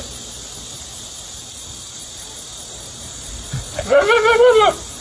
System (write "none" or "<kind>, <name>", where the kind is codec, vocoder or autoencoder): none